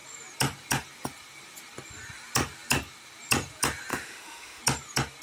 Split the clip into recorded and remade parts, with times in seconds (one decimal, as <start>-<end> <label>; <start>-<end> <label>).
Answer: 0.0-3.9 recorded; 3.9-4.6 remade; 4.6-5.2 recorded